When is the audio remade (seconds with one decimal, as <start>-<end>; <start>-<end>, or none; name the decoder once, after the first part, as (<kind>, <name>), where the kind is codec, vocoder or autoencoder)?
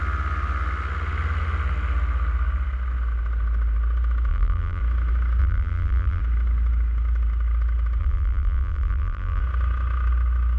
4.3-4.8 (vocoder, BigVGAN v2); 5.4-6.2; 8.0-9.4